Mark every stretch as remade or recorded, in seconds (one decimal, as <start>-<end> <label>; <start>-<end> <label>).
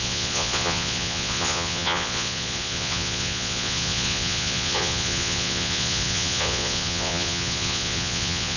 0.0-8.6 remade